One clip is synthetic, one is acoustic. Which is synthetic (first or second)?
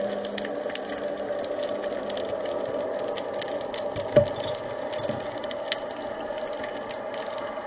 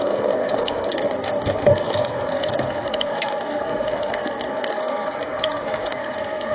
second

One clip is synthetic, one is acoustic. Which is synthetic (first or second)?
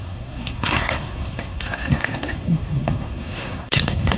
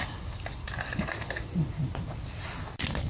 first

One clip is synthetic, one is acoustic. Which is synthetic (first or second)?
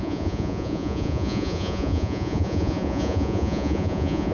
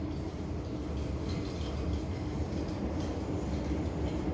first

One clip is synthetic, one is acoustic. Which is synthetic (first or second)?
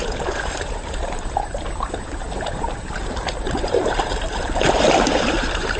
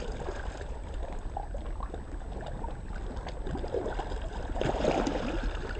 first